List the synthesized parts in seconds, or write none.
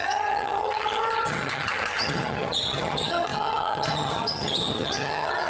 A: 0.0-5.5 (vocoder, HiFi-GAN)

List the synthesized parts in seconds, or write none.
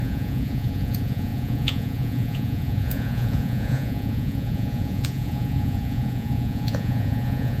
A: 0.0-7.6 (vocoder, Vocos)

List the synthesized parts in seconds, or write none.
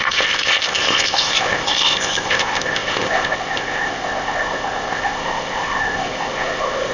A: 0.0-6.9 (codec, ZipCodec)